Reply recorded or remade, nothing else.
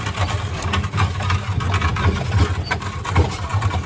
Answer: recorded